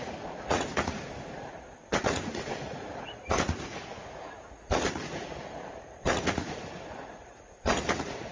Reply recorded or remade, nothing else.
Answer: remade